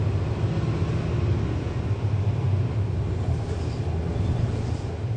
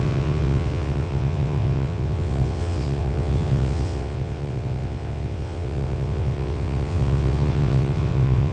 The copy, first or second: second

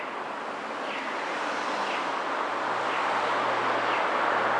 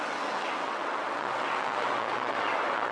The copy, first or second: second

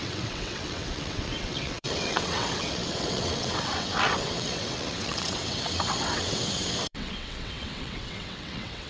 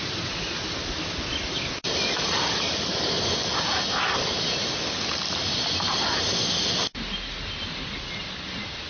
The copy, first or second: first